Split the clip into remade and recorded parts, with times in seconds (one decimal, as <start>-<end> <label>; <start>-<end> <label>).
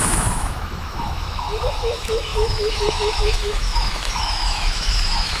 0.0-5.4 remade